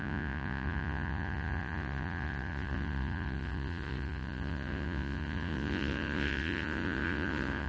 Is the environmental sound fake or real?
fake